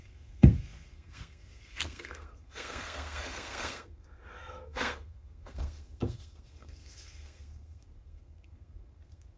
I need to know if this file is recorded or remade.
remade